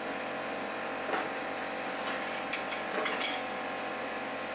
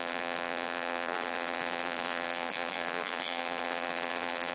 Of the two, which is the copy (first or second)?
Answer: second